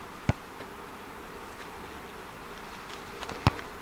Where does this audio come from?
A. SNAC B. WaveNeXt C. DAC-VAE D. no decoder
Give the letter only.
D